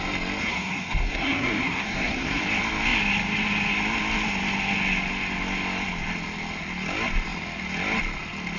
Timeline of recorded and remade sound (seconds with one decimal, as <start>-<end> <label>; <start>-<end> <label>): 0.0-0.4 recorded; 0.4-2.4 remade; 2.4-8.6 recorded